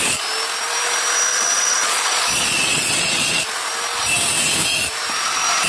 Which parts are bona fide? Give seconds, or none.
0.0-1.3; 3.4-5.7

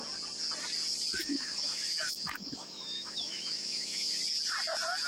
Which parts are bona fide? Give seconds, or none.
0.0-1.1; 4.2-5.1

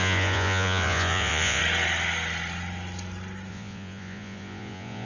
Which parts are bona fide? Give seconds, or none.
1.6-3.5

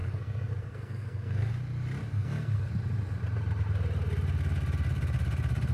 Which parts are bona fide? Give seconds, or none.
1.5-2.0; 2.7-5.7

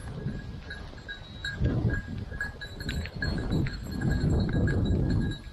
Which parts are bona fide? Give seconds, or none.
0.0-5.5